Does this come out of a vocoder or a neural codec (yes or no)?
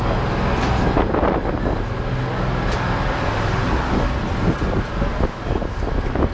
no